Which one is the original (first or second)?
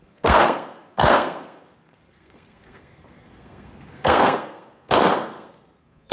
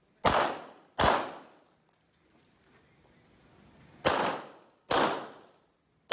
second